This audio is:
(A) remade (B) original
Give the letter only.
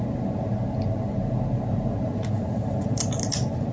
B